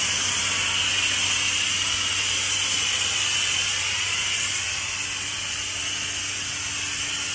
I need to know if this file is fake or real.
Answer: real